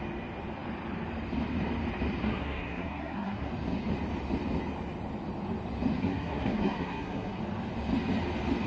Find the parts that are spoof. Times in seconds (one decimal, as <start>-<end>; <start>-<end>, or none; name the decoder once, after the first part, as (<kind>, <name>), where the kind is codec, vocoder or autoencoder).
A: 2.2-3.5 (codec, SNAC); 6.0-7.4